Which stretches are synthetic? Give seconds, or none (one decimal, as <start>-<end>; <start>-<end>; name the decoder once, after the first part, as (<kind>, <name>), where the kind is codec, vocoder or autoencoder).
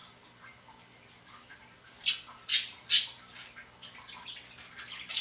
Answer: none